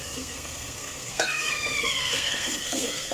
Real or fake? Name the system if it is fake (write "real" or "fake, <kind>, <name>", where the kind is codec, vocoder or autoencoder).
fake, codec, SNAC